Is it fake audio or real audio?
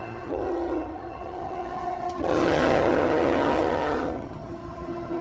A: fake